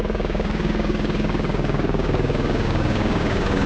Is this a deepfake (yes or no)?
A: yes